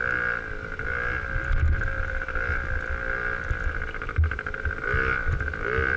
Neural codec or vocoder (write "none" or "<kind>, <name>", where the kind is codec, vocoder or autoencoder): none